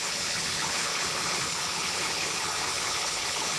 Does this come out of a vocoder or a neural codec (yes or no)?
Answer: yes